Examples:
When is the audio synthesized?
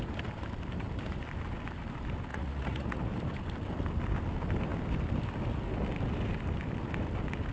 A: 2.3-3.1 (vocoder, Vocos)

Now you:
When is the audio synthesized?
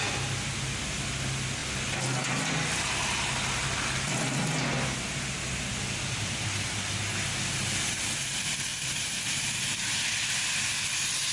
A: 8.7-10.0 (vocoder, BigVGAN v2)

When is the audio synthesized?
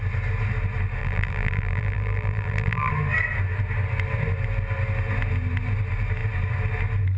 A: 1.0-2.9 (vocoder, BigVGAN v2)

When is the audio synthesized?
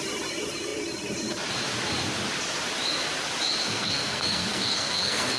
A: 3.6-5.4 (codec, SNAC)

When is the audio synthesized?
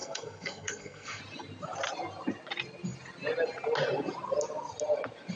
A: 0.0-1.2 (codec, SNAC)